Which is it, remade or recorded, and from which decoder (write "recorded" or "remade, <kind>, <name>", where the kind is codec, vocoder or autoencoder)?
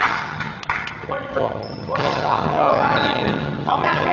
remade, vocoder, HiFi-GAN